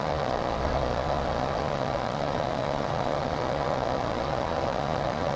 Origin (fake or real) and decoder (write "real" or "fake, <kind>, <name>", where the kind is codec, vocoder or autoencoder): fake, vocoder, Vocos